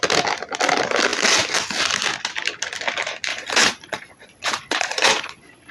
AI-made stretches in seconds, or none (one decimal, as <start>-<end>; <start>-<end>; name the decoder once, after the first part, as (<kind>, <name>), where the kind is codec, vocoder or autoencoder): 3.3-5.7 (vocoder, Vocos)